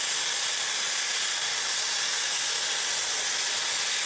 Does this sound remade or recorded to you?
recorded